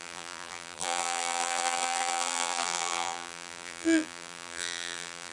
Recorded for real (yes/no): no